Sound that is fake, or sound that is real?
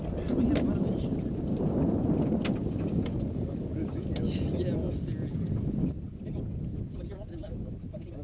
real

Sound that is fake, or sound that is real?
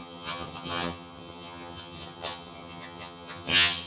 fake